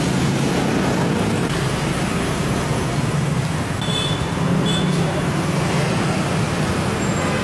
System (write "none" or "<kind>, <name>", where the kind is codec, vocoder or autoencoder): none